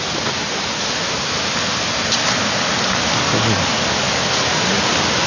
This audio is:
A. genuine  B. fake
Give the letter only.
A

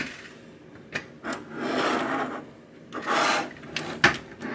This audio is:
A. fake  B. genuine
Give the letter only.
B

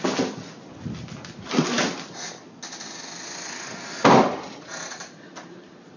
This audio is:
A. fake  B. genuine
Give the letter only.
B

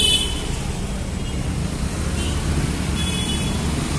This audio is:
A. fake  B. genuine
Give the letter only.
B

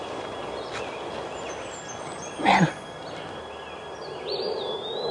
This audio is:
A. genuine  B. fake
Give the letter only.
A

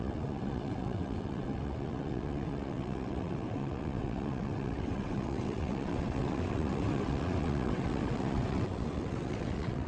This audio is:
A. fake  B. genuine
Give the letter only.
A